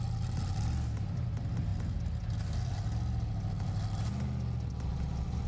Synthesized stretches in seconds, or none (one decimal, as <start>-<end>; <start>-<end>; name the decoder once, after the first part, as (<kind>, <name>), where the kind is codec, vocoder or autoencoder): none